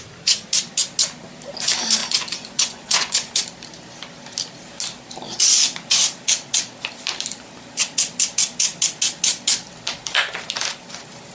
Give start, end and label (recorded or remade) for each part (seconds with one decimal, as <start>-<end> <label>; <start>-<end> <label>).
0.0-2.0 recorded; 2.0-3.3 remade; 3.3-11.3 recorded